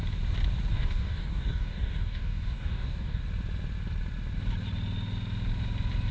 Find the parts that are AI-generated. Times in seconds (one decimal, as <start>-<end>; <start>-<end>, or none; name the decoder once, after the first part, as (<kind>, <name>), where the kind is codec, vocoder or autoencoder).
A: 0.7-3.2 (codec, DAC)